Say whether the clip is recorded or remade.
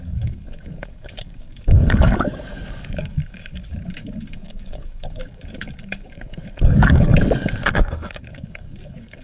remade